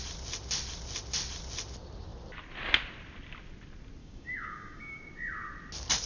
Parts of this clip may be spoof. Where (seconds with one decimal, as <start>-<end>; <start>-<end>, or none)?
4.0-5.0

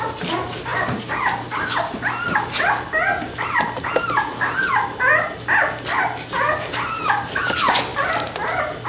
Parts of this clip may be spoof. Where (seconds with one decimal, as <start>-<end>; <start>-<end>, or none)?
none

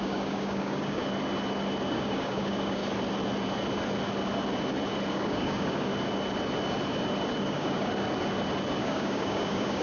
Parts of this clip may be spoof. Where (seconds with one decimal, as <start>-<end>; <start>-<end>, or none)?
0.0-1.0; 1.9-2.8; 5.1-5.9; 7.4-7.9; 8.8-9.8

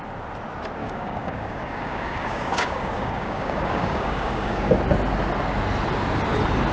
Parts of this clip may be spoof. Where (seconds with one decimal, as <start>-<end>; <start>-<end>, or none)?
0.8-4.7

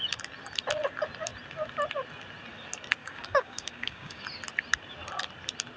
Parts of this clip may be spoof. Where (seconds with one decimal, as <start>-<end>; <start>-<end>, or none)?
3.0-4.2

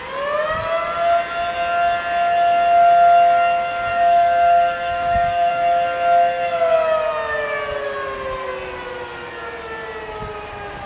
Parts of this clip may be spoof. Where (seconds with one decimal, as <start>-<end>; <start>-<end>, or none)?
3.9-5.5